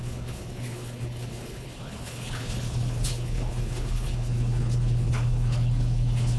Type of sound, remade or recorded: remade